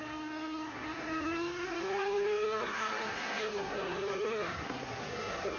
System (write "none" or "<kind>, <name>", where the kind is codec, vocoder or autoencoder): codec, SNAC